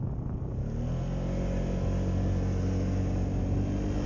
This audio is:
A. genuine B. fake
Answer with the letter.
A